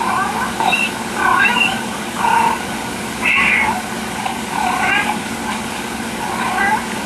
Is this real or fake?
fake